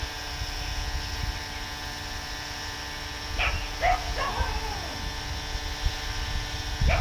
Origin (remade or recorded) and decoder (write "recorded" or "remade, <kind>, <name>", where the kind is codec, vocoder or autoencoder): recorded